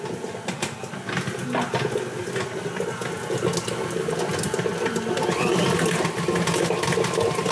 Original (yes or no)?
yes